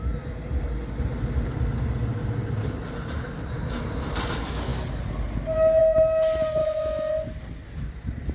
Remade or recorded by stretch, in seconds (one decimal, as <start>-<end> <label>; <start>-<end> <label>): 0.0-6.6 recorded; 6.6-7.1 remade; 7.1-8.3 recorded